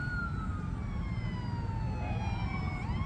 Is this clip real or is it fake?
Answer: real